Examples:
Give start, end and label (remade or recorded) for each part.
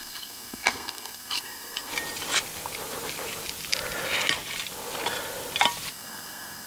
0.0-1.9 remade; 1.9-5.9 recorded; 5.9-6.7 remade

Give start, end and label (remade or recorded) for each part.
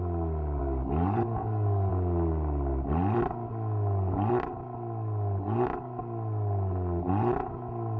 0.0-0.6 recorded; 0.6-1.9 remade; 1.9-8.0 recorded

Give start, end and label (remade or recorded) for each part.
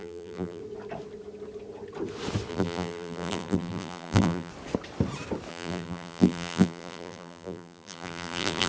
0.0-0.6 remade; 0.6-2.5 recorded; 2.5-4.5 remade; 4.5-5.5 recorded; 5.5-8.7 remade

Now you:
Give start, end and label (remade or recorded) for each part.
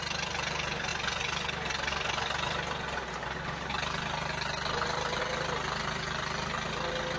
0.0-7.2 recorded